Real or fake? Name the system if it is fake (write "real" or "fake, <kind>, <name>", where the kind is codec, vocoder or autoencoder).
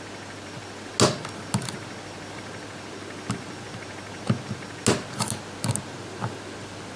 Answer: real